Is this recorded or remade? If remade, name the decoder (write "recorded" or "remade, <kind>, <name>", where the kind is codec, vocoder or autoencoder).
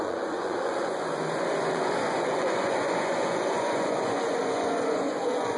remade, vocoder, Vocos